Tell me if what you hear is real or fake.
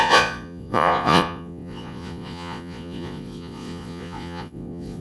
fake